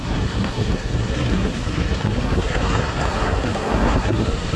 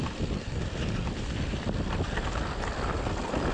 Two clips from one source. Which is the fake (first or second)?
first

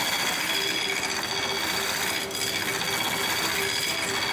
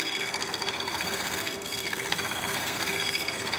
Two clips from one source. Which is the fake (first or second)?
second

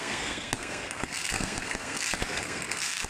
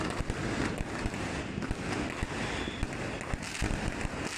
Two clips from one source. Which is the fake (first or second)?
first